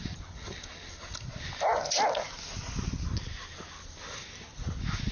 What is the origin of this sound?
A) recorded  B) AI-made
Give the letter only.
A